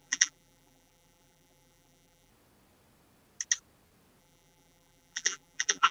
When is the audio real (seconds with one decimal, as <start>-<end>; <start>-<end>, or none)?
2.3-4.2